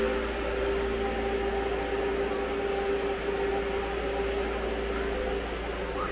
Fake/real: real